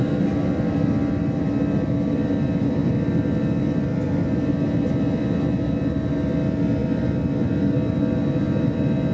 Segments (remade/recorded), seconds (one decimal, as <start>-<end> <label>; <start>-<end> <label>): 0.0-9.1 recorded

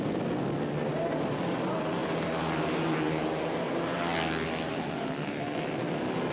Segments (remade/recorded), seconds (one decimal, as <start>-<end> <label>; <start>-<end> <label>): 0.0-0.9 recorded; 0.9-1.4 remade; 1.4-2.0 recorded; 2.0-4.0 remade; 4.0-6.3 recorded

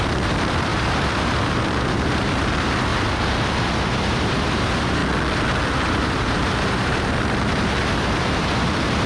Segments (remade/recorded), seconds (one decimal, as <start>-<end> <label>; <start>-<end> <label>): 0.0-5.0 remade; 5.0-5.7 recorded; 5.7-9.1 remade